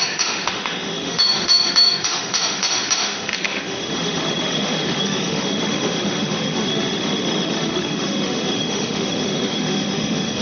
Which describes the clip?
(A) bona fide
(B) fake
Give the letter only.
B